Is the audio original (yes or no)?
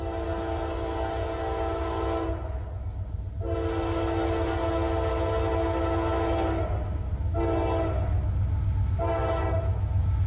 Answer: yes